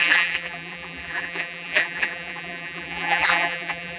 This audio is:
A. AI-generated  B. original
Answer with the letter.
A